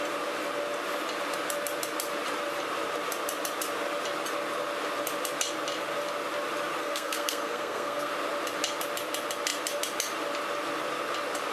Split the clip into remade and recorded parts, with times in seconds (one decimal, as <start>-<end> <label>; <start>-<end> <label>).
0.0-6.8 recorded; 6.8-8.1 remade; 8.1-11.5 recorded